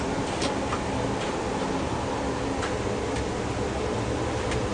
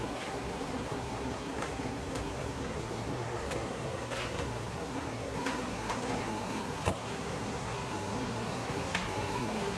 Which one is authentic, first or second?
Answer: first